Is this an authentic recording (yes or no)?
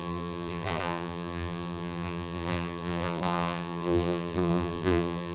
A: no